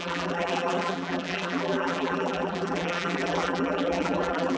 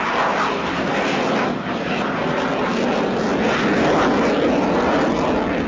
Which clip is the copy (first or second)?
first